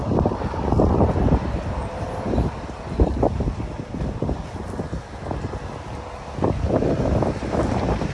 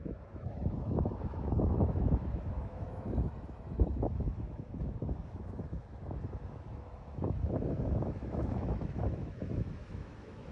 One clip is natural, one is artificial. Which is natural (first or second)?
first